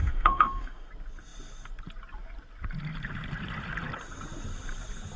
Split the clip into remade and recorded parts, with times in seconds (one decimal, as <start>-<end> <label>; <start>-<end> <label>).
0.0-0.9 remade; 0.9-5.2 recorded